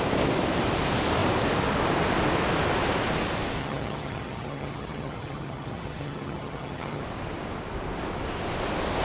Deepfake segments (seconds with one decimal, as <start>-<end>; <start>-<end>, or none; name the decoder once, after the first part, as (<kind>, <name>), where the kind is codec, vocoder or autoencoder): 3.6-7.0 (vocoder, HiFi-GAN)